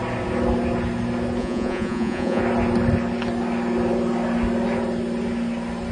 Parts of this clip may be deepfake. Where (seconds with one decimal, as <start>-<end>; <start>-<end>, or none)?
1.4-2.4